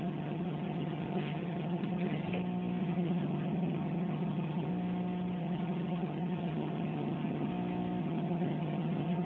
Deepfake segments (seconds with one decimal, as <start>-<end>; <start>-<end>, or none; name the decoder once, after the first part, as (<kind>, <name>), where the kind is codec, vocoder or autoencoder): 0.0-2.3 (vocoder, HiFi-GAN); 2.8-4.7; 5.4-7.5; 8.0-9.2